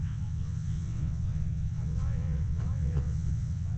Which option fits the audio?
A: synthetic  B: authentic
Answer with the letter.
A